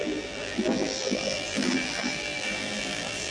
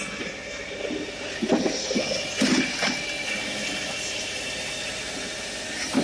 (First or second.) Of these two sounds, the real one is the second